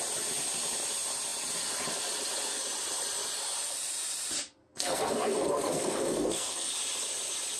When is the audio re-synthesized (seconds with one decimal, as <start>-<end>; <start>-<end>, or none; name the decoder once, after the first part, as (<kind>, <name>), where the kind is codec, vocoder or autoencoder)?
4.7-6.7 (codec, SNAC)